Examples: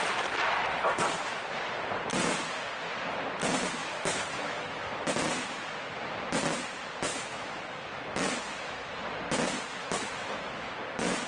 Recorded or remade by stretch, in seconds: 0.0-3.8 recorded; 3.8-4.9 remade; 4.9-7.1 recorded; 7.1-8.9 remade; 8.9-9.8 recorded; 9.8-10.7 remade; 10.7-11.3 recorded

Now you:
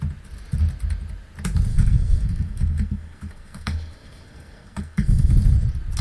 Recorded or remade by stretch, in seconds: 0.0-1.7 recorded; 1.7-5.3 remade; 5.3-6.0 recorded